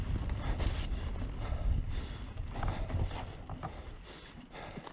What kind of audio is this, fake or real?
real